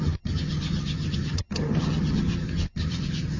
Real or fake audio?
fake